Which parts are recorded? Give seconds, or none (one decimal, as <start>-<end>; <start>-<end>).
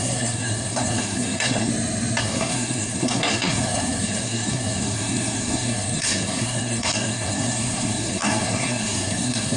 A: 1.7-2.2